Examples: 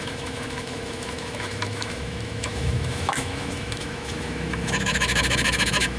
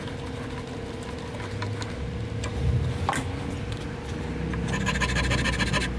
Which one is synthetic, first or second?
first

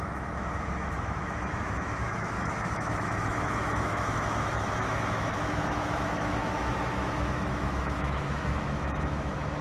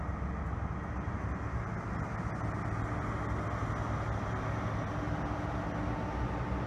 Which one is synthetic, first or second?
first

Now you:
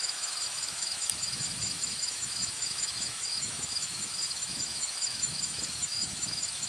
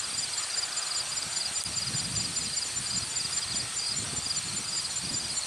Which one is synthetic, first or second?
first